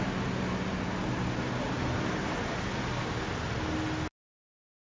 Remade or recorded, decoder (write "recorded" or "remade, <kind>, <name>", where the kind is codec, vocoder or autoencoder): recorded